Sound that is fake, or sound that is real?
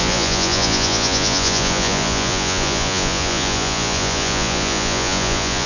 fake